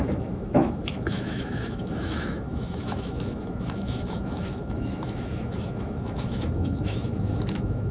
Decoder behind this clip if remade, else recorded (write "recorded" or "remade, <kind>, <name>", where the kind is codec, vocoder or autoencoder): remade, autoencoder, DAC-VAE